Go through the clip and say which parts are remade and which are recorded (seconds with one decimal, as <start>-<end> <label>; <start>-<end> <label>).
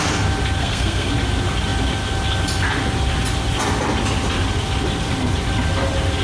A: 0.0-0.6 recorded; 0.6-1.1 remade; 1.1-6.2 recorded